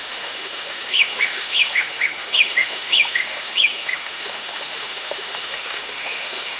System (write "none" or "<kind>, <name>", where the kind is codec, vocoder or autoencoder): autoencoder, DAC-VAE